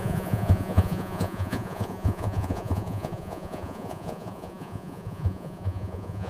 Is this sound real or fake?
fake